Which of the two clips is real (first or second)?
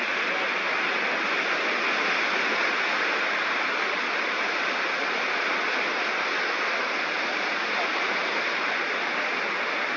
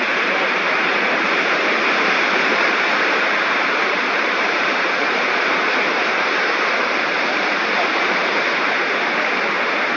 first